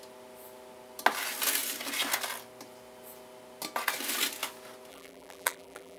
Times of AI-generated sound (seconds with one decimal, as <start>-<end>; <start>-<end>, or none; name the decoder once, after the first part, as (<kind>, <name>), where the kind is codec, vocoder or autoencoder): 4.9-6.0 (vocoder, BigVGAN v2)